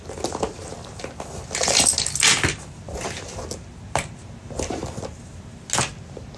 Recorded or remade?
recorded